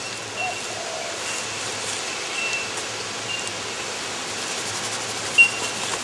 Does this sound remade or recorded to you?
recorded